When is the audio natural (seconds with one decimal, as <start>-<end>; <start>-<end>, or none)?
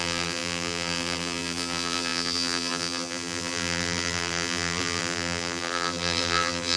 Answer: none